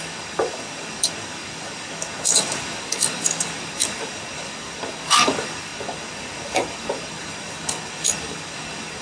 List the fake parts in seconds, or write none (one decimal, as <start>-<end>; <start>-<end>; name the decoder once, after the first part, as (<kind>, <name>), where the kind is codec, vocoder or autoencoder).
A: 0.0-9.0 (codec, DAC)